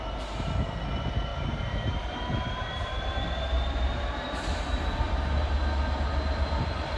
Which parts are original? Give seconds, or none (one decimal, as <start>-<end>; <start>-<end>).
0.0-1.3; 5.5-7.0